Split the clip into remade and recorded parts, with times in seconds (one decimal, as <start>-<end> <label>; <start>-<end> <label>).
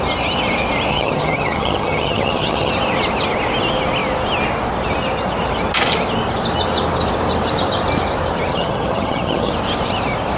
0.0-0.9 recorded; 0.9-2.7 remade; 2.7-8.5 recorded; 8.5-9.5 remade; 9.5-10.4 recorded